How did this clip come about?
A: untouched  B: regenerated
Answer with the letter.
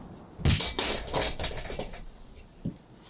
A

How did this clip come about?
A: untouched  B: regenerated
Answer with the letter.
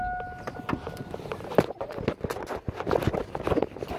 A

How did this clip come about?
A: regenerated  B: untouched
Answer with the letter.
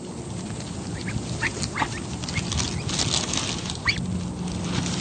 B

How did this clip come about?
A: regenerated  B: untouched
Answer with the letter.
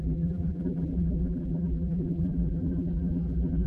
A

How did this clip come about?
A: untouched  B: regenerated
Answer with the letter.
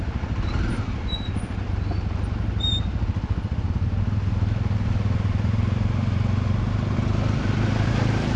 A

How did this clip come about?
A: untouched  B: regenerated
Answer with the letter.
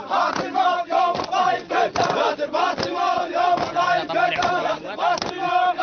A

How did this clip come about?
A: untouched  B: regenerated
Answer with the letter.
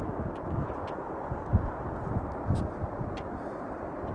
A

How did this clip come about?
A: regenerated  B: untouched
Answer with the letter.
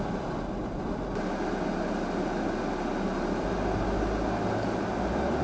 B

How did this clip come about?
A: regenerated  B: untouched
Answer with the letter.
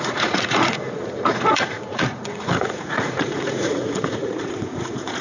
A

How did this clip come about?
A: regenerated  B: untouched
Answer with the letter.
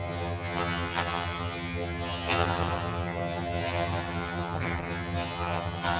A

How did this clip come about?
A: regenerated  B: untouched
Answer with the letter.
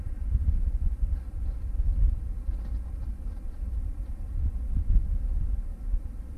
B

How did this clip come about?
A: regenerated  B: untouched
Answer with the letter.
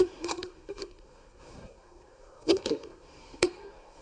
A